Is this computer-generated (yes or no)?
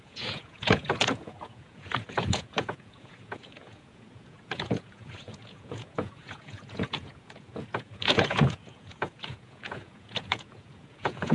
yes